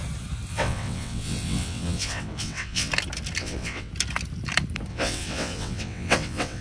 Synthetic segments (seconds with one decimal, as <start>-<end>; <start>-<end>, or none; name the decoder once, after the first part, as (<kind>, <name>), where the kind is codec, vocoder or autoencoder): 0.5-2.9 (vocoder, WaveNeXt); 3.4-3.9; 4.9-6.6